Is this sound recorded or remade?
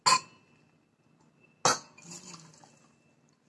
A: recorded